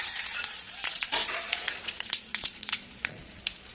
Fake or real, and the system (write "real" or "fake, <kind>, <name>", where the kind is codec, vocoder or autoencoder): fake, vocoder, Vocos